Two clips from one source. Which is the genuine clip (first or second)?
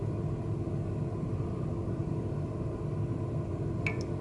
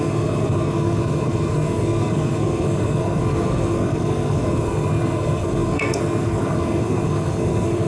first